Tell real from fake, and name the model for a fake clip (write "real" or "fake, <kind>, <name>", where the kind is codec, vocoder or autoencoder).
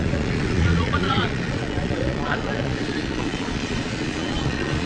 fake, vocoder, Vocos